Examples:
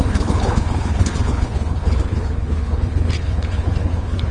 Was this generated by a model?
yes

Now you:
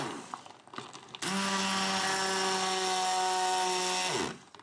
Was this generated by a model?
no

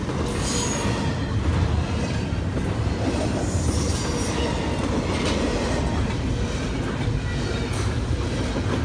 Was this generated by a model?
no